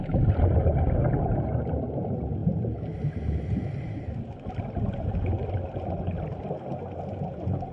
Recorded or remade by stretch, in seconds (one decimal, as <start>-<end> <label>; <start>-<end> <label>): 0.0-7.7 recorded

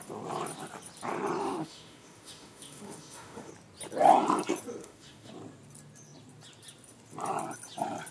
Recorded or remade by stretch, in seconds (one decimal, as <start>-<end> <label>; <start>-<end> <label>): 0.0-1.4 recorded; 1.4-3.5 remade; 3.5-4.8 recorded; 4.8-5.3 remade; 5.3-8.1 recorded

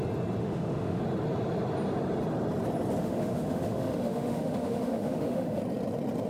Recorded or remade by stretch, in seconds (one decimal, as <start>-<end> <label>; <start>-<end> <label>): 0.0-0.4 recorded; 0.4-1.0 remade; 1.0-3.0 recorded; 3.0-5.6 remade; 5.6-6.3 recorded

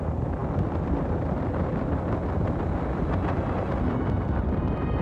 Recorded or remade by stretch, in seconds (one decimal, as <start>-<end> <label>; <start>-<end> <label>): 0.0-5.0 recorded

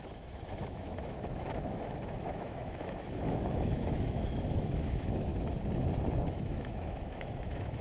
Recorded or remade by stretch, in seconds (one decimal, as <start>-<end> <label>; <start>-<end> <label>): 0.0-5.3 remade; 5.3-6.3 recorded; 6.3-7.8 remade

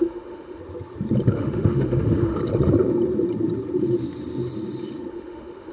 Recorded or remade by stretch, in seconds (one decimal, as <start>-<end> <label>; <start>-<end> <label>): 0.0-0.6 remade; 0.6-1.3 recorded; 1.3-2.4 remade; 2.4-5.1 recorded; 5.1-5.7 remade

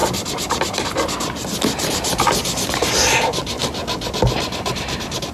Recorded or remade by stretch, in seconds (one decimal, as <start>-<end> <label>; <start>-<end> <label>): 0.0-5.3 recorded